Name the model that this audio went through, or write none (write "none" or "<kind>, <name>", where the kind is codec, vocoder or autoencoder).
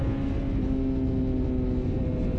none